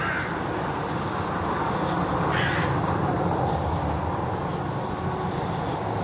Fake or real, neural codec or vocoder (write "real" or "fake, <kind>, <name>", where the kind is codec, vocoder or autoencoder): real